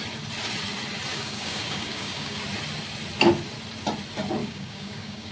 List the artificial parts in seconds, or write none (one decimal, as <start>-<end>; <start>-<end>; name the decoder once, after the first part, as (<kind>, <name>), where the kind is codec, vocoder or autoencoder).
1.1-2.4 (codec, DAC); 4.4-5.3